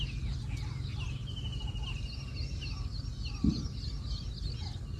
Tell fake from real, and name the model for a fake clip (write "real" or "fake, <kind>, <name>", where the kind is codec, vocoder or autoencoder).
real